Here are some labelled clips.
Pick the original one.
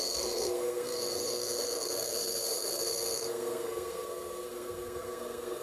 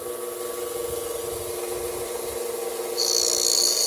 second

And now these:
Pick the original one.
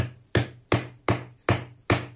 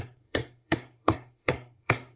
first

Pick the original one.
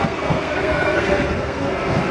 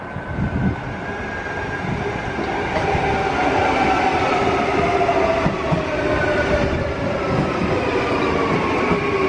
second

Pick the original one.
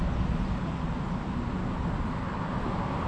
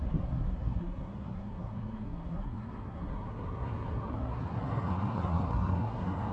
first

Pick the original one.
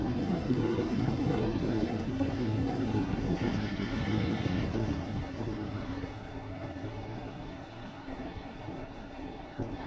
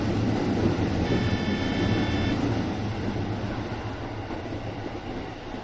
second